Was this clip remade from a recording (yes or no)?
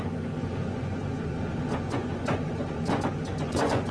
yes